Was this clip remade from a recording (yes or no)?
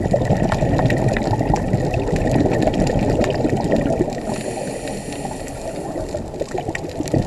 no